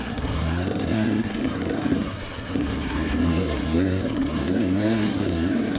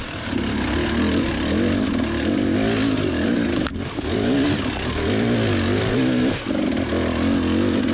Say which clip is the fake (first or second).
first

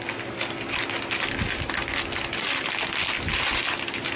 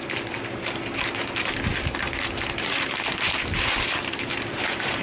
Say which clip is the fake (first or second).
second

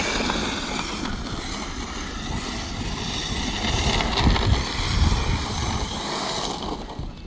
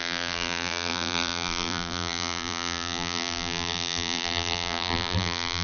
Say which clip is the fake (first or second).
second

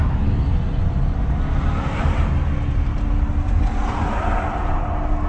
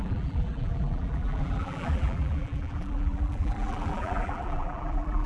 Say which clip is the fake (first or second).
second